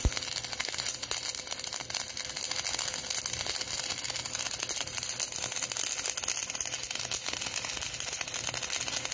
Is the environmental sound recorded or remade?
recorded